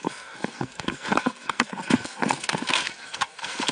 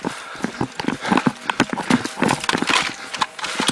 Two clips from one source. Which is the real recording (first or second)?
second